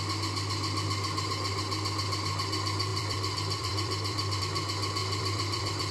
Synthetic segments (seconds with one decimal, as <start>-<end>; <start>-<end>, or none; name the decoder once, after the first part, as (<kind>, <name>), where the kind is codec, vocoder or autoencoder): 2.9-4.4 (vocoder, BigVGAN v2); 5.0-5.9